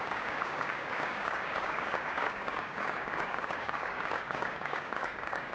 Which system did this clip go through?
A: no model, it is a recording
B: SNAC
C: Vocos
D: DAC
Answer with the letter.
D